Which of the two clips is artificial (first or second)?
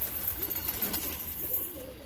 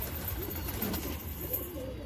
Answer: first